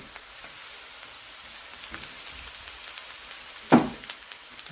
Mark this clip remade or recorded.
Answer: recorded